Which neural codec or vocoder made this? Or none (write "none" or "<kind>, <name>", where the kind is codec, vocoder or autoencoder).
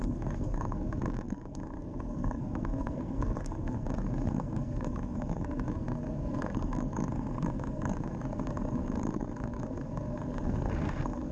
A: codec, SNAC